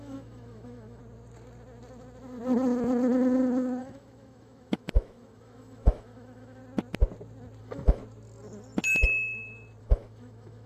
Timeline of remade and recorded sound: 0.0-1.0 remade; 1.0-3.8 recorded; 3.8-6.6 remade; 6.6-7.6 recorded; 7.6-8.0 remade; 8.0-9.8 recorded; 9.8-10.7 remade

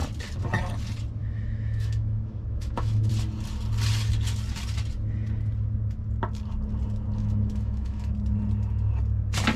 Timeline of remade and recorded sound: 0.0-1.2 recorded; 1.2-3.1 remade; 3.1-7.2 recorded; 7.2-8.1 remade; 8.1-9.6 recorded

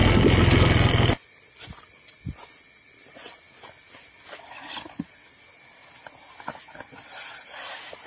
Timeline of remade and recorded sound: 0.0-8.1 recorded

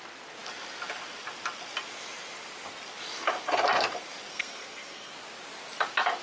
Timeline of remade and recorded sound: 0.0-4.3 recorded; 4.3-5.1 remade; 5.1-6.2 recorded

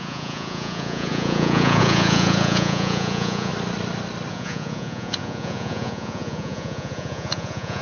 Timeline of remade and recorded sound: 0.0-3.5 remade; 3.5-4.3 recorded; 4.3-7.8 remade